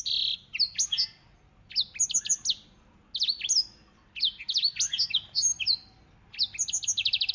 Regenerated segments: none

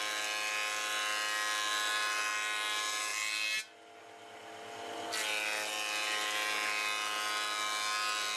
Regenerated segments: none

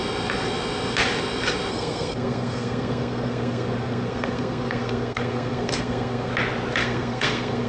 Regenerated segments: 1.7-6.3 (codec, SNAC); 6.8-7.7

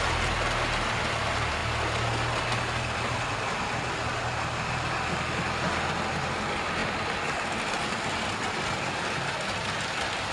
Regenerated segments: none

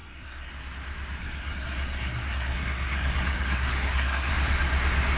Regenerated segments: 0.0-0.5 (codec, SNAC); 1.2-4.3

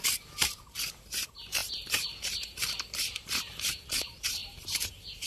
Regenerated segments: 1.6-3.8 (vocoder, BigVGAN v2); 4.4-5.3

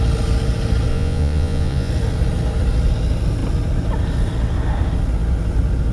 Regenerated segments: 0.9-1.9 (vocoder, Vocos)

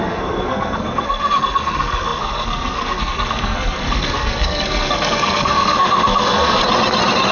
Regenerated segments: 0.0-6.6 (codec, SNAC)